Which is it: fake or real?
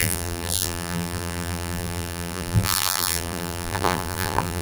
fake